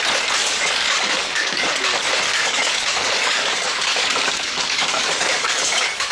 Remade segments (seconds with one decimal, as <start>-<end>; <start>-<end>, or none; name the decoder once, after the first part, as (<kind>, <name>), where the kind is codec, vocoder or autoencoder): 0.4-1.8 (codec, DAC); 2.3-6.1